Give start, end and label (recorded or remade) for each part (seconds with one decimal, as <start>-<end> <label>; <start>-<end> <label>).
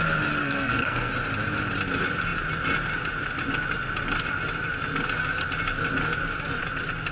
0.0-0.4 recorded; 0.4-1.1 remade; 1.1-7.1 recorded